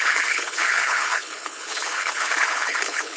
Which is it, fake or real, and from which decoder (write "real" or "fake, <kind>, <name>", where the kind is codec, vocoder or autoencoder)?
fake, codec, HILCodec